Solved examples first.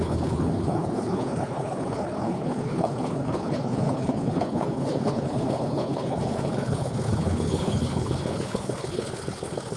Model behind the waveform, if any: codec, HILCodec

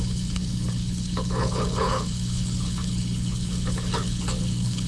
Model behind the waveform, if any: codec, HILCodec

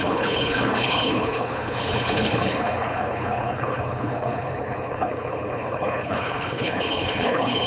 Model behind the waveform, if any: codec, HILCodec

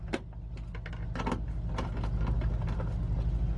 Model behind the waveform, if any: none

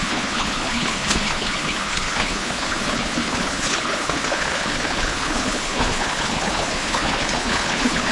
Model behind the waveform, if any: codec, HILCodec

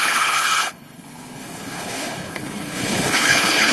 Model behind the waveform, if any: codec, HILCodec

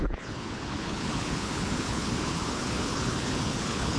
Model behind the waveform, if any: codec, HILCodec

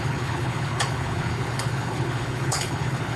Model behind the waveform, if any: codec, HILCodec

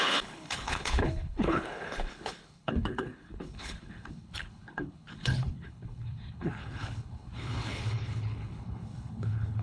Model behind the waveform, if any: codec, HILCodec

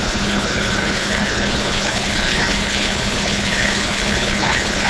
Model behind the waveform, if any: codec, HILCodec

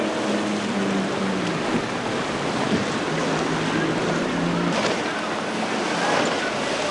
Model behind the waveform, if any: none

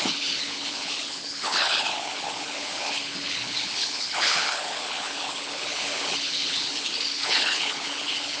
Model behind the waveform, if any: codec, HILCodec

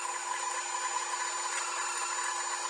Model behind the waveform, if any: none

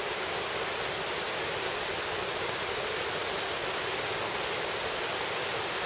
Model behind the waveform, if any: none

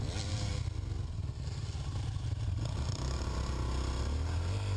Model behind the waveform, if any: none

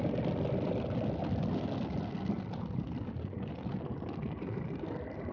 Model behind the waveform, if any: none